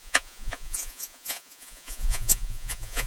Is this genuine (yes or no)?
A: no